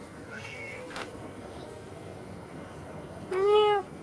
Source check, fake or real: fake